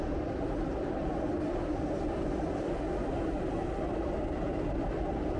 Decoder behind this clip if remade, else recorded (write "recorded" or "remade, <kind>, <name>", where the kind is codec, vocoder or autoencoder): recorded